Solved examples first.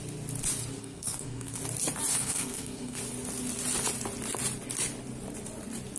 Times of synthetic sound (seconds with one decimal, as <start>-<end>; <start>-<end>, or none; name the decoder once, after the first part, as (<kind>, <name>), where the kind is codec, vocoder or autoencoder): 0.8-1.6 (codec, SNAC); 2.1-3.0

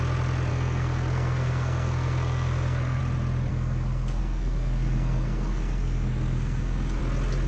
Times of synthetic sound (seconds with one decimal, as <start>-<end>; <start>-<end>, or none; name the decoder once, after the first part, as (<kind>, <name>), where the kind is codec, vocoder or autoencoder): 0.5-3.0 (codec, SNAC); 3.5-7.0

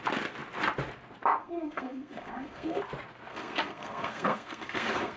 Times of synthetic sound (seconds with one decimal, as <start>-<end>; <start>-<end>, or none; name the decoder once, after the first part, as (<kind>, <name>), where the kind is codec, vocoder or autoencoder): 1.4-2.8 (codec, SNAC); 3.3-5.2

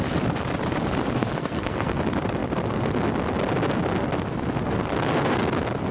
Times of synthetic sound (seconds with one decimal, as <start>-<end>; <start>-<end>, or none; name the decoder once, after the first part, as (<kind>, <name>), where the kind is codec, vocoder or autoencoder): 1.2-2.0 (codec, SNAC)

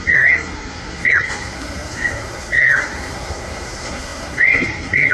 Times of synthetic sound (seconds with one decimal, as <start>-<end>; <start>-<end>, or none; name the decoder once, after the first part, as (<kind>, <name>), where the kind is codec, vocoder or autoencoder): 0.0-5.1 (codec, SNAC)